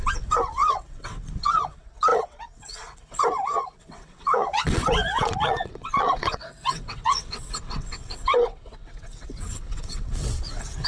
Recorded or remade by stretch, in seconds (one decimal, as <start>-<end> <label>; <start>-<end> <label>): 0.0-10.9 remade